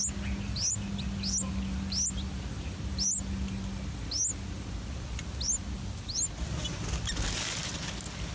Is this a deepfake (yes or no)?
no